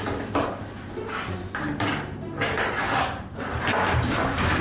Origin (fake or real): real